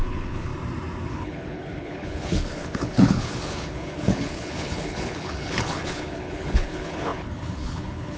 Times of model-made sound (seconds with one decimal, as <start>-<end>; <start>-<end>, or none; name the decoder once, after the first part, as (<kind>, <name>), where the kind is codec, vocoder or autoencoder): 0.0-0.5 (codec, HILCodec); 1.1-8.2